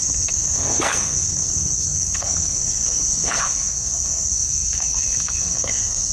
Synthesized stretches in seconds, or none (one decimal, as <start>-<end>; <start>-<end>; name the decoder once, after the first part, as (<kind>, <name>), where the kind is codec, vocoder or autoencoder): 0.0-6.1 (codec, SNAC)

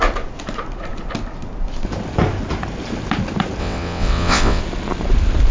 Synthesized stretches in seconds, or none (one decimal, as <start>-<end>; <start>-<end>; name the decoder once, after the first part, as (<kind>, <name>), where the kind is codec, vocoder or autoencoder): 3.6-4.6 (vocoder, WaveNeXt)

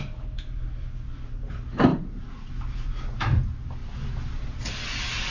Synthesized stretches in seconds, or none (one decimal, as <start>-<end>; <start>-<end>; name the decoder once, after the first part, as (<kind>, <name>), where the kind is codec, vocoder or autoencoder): 1.9-2.5 (vocoder, BigVGAN v2); 3.8-4.7

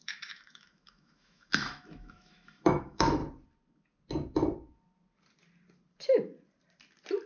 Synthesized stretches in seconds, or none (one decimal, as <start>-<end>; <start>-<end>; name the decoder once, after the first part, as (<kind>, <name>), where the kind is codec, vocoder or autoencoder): 0.0-3.2 (autoencoder, DAC-VAE)

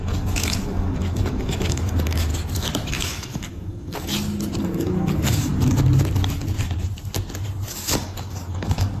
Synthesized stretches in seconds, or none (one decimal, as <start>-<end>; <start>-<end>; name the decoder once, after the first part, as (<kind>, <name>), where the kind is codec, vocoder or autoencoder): 0.0-2.3 (codec, DAC); 2.9-4.1; 4.6-5.5; 7.7-9.0

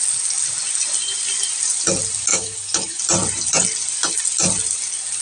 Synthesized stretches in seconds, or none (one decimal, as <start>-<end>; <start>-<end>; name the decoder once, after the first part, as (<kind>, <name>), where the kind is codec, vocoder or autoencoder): 2.3-3.0 (autoencoder, DAC-VAE)